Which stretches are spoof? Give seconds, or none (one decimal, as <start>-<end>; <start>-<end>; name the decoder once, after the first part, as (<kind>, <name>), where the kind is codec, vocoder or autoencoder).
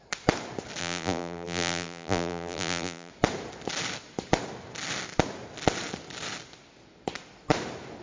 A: 0.8-3.1 (vocoder, BigVGAN v2)